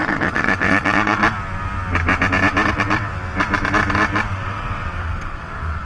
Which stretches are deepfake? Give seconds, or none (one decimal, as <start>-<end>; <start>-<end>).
0.0-1.2; 2.7-3.1; 4.3-5.9